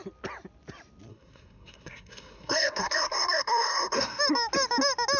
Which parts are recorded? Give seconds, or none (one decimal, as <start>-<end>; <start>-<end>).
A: 0.0-1.1; 4.2-5.2